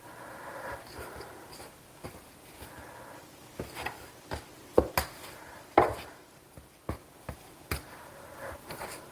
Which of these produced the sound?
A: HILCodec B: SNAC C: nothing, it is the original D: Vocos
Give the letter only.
C